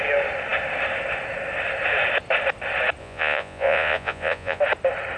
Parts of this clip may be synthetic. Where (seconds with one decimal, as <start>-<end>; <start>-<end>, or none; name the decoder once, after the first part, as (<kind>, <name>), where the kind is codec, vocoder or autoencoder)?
3.0-4.6 (vocoder, Vocos)